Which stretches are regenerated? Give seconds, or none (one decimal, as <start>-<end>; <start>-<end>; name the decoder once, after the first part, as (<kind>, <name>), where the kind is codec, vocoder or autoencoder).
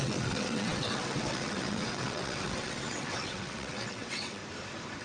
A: 0.0-4.4 (vocoder, WaveNeXt)